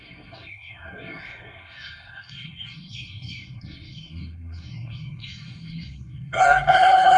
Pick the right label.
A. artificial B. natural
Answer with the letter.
A